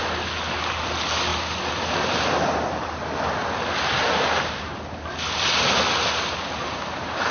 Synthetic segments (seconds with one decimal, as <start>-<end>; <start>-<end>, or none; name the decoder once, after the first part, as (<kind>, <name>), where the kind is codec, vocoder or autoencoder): none